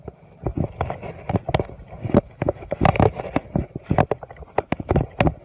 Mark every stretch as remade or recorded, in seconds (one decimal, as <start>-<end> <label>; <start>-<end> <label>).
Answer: 0.0-2.0 recorded; 2.0-3.2 remade; 3.2-5.4 recorded